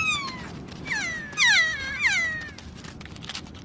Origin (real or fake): real